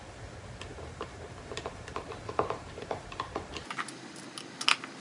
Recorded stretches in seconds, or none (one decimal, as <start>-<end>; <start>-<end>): 0.0-0.7; 3.7-5.0